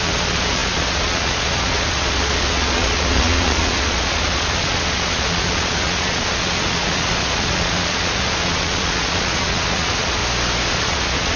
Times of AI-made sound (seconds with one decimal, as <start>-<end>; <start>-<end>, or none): 0.0-10.2; 10.7-11.4